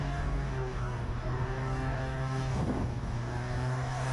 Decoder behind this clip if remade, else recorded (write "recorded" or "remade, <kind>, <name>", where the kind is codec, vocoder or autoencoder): remade, codec, DAC